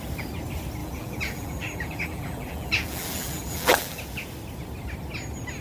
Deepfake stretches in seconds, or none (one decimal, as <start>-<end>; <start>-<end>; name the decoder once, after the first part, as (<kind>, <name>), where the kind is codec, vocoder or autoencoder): 0.8-4.0 (vocoder, BigVGAN v2)

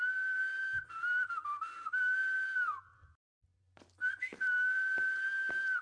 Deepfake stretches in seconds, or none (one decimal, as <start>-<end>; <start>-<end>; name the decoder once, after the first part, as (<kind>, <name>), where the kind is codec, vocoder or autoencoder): none

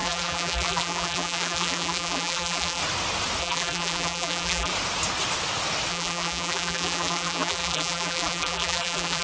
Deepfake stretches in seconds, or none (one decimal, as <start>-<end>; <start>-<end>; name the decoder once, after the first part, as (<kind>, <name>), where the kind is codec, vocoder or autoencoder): 0.0-2.8 (vocoder, BigVGAN v2); 3.4-4.7; 5.9-9.2

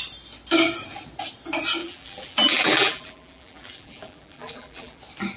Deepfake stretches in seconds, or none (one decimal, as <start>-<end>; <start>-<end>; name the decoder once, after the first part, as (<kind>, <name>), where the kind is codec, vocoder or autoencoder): 1.8-5.0 (vocoder, BigVGAN v2)

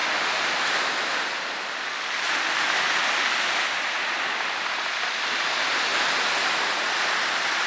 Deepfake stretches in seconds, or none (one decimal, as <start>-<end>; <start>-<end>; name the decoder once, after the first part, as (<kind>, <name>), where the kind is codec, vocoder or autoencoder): 4.1-5.9 (vocoder, BigVGAN v2); 6.4-7.7

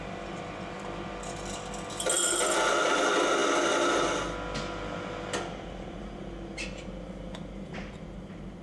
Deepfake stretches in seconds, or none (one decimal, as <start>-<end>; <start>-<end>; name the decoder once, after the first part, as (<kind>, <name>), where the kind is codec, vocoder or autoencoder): none

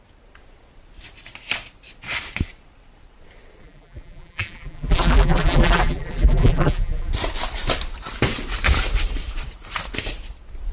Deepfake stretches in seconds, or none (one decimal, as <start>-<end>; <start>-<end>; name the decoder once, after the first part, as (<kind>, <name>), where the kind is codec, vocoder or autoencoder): 3.6-7.1 (vocoder, BigVGAN v2)